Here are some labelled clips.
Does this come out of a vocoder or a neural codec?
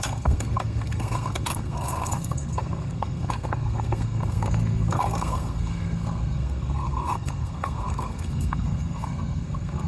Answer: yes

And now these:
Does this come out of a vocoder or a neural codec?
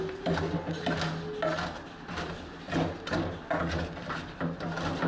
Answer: no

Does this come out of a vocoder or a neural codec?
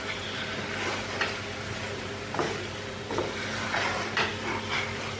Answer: no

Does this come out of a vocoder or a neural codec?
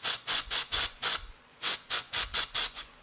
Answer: yes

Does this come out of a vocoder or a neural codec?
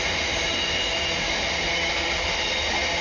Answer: no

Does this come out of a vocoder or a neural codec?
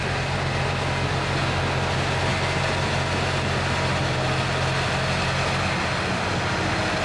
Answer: no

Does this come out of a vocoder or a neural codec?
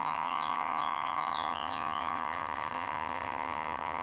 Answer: yes